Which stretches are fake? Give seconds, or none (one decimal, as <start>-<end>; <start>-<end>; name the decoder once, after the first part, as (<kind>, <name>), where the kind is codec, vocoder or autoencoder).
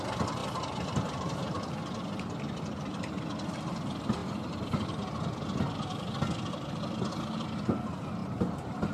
0.4-1.7 (vocoder, BigVGAN v2); 2.7-3.2; 8.2-8.9